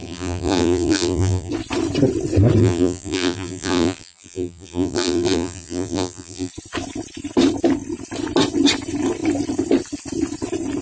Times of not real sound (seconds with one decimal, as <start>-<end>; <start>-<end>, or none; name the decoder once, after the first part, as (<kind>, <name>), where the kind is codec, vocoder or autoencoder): 0.0-1.5 (vocoder, BigVGAN v2); 2.6-6.5